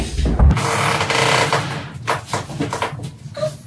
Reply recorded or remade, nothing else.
recorded